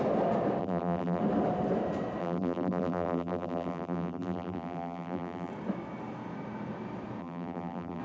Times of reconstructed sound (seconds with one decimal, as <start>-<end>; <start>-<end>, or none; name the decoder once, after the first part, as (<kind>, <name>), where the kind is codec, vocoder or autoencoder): 0.6-1.2 (vocoder, BigVGAN v2); 2.2-5.5; 7.2-8.0